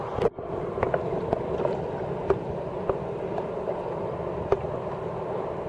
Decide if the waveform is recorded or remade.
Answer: recorded